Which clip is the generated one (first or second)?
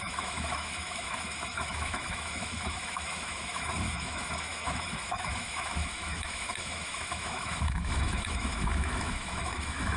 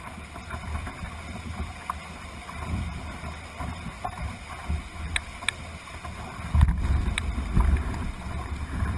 first